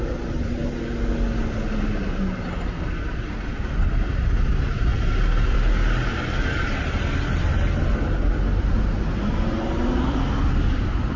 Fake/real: real